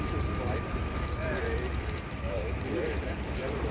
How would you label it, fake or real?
fake